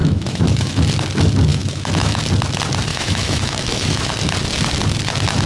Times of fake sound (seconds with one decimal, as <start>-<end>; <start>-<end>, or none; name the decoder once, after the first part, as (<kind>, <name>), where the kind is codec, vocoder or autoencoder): 0.0-0.8 (autoencoder, DAC-VAE); 1.5-2.2; 2.9-4.1